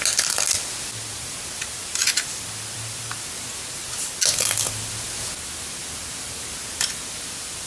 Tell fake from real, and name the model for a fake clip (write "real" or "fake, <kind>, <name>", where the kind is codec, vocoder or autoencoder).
real